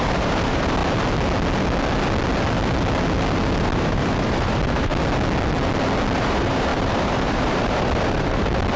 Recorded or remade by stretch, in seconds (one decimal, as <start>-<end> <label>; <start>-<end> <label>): 0.0-0.8 remade; 0.8-3.6 recorded; 3.6-4.9 remade; 4.9-6.2 recorded; 6.2-8.8 remade